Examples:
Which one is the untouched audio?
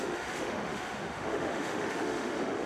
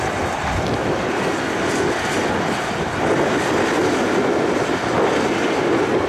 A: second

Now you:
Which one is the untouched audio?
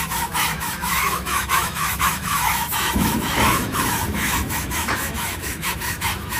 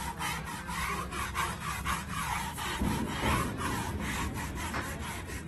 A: second